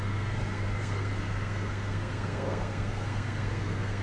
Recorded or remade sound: remade